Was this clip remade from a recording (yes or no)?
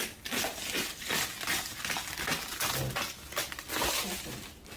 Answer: no